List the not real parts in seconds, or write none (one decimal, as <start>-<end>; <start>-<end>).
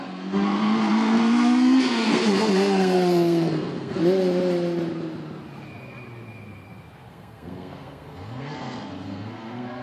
0.0-4.0; 7.1-9.8